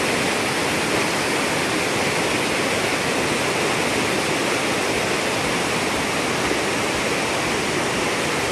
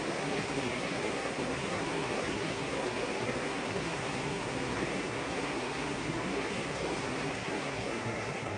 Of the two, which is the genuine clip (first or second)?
first